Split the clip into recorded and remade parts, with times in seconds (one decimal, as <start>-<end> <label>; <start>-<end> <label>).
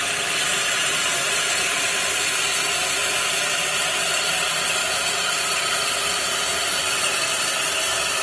0.0-0.8 recorded; 0.8-2.3 remade; 2.3-8.2 recorded